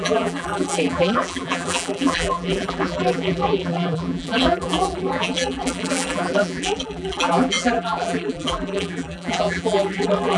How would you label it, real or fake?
fake